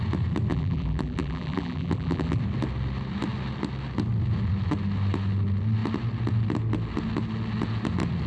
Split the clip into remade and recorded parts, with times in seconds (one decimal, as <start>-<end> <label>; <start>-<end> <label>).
0.0-0.5 recorded; 0.5-2.4 remade; 2.4-8.3 recorded